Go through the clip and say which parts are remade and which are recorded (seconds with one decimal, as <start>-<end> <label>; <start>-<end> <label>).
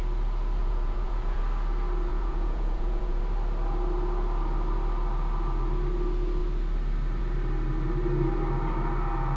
0.0-0.6 recorded; 0.6-1.4 remade; 1.4-2.1 recorded; 2.1-3.2 remade; 3.2-9.4 recorded